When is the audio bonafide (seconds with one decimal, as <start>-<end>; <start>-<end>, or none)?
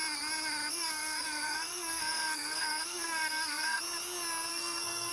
0.0-0.7; 3.8-4.5